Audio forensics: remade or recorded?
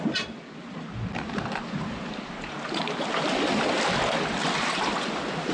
recorded